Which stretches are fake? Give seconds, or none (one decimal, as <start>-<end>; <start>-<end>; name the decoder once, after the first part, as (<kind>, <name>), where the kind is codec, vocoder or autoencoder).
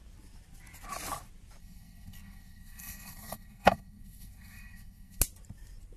1.6-5.2 (codec, SNAC)